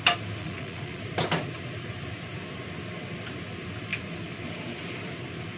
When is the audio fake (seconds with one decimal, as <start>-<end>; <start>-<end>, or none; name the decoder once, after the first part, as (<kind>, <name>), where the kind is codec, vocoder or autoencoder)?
0.4-1.0 (vocoder, Vocos)

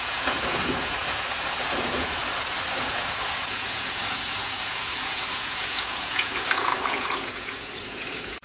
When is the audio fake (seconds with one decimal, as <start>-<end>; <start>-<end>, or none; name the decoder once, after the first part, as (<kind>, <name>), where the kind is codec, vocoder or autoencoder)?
0.0-2.3 (vocoder, Vocos); 2.8-8.4